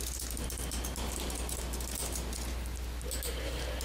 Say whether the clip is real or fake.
real